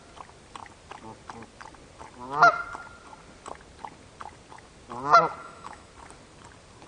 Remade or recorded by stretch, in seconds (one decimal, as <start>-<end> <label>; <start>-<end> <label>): 0.0-5.4 recorded; 5.4-5.9 remade; 5.9-6.9 recorded